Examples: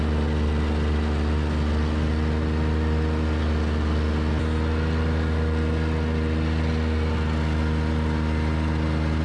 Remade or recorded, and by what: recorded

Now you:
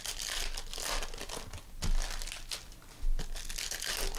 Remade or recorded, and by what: recorded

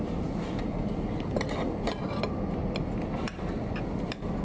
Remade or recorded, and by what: recorded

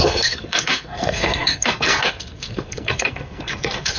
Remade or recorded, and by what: remade, codec, SNAC